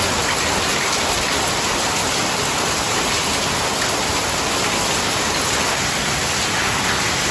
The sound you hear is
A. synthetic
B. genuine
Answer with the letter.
B